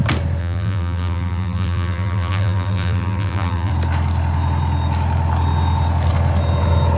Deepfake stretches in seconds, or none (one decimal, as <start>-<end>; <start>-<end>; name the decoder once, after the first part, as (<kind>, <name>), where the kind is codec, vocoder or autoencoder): 0.4-3.7 (vocoder, BigVGAN v2)